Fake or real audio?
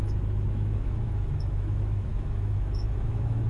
fake